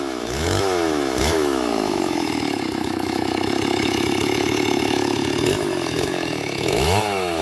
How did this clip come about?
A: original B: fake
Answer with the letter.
B